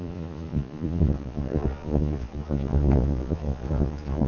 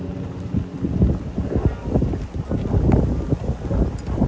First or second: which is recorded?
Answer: second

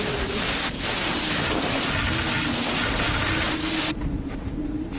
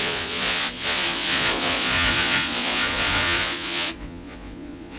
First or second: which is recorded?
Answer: first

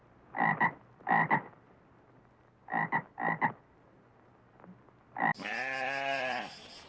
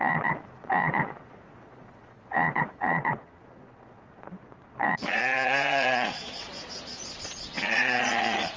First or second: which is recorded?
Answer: first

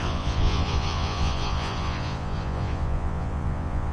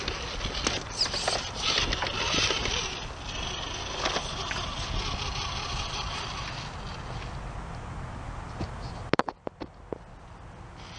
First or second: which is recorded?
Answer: second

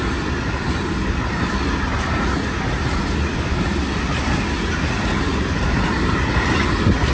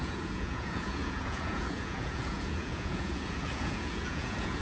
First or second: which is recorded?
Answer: first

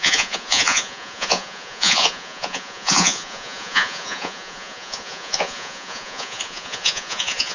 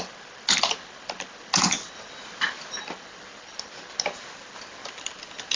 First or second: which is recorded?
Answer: second